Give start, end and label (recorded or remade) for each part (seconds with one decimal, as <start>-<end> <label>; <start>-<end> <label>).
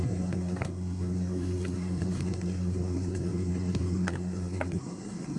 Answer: 0.0-5.4 remade